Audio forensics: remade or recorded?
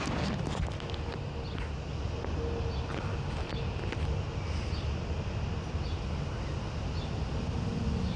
recorded